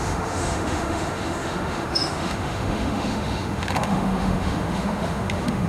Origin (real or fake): fake